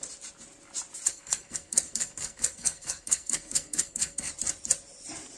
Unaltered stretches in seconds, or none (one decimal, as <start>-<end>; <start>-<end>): 0.0-1.1; 4.3-5.4